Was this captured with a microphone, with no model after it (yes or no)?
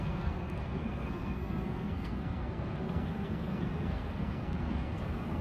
no